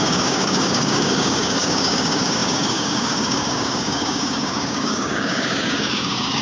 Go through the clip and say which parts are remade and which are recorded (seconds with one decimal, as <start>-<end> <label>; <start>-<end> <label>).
0.0-6.4 remade

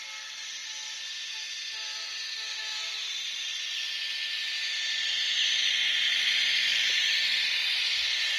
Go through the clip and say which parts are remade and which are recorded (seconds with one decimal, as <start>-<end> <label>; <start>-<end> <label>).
0.0-6.7 recorded; 6.7-7.8 remade; 7.8-8.4 recorded